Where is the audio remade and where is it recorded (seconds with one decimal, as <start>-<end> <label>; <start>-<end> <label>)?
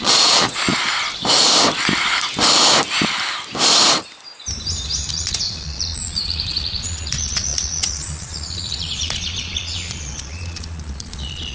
0.0-0.7 remade; 0.7-5.1 recorded; 5.1-11.5 remade